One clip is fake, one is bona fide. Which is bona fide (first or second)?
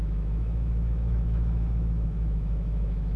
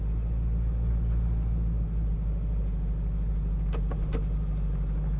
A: second